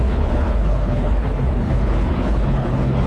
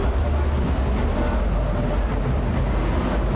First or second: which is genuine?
second